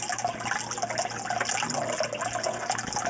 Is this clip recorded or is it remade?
recorded